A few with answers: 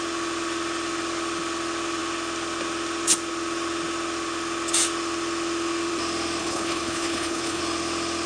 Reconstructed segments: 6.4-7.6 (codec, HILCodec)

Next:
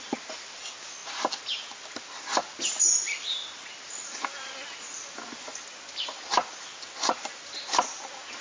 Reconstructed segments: none

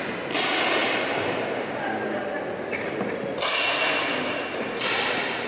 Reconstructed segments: none

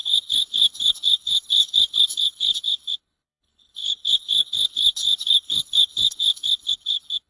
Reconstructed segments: 0.0-7.3 (codec, HILCodec)

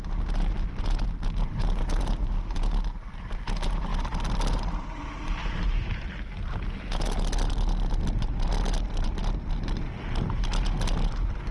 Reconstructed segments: none